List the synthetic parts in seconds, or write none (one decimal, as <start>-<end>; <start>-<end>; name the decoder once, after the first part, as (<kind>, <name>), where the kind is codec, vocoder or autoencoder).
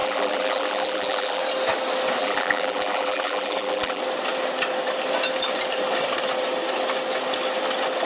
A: 0.0-1.4 (vocoder, BigVGAN v2); 2.2-4.0